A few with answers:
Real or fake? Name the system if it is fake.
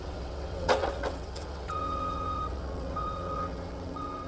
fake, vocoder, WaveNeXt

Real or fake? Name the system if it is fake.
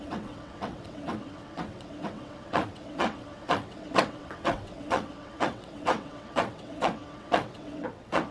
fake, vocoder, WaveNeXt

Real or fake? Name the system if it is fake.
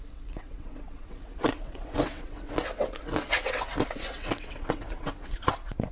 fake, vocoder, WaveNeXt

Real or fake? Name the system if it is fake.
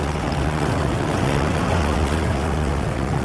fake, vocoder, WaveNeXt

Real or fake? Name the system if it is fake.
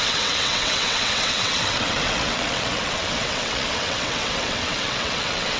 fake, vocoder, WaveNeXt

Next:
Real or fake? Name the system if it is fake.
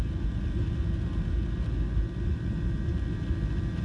real